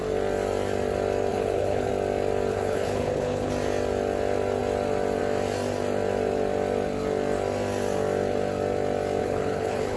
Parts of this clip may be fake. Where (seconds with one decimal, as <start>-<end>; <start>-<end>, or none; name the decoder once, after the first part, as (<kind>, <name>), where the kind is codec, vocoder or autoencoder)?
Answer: 1.3-1.9 (codec, HILCodec); 2.5-3.5; 9.2-10.0